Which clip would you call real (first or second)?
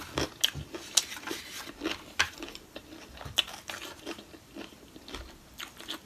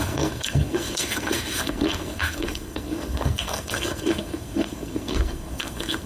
first